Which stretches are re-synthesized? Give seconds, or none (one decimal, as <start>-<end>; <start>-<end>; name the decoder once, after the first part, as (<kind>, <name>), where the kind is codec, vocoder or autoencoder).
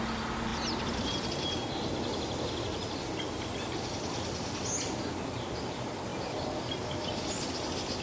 none